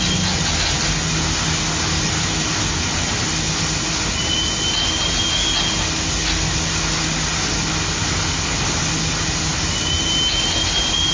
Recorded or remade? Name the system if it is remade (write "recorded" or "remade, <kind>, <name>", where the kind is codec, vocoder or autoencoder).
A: recorded